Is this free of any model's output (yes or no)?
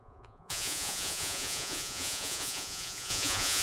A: no